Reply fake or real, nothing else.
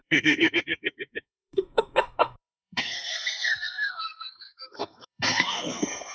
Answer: fake